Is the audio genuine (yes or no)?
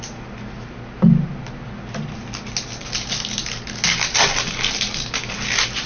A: yes